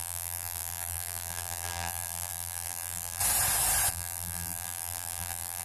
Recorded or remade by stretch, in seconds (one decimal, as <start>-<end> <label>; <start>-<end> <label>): 0.0-3.2 remade; 3.2-3.9 recorded; 3.9-5.6 remade